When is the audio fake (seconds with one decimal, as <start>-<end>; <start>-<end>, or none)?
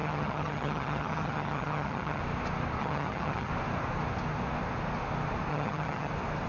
0.0-2.2; 2.8-3.5; 5.5-6.1